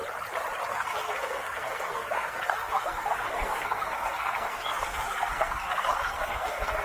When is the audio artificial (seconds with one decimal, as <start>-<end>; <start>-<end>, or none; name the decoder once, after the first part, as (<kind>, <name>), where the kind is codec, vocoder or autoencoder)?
0.7-6.8 (codec, SNAC)